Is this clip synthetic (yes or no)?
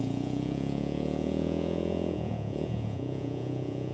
yes